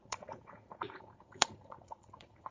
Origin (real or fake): fake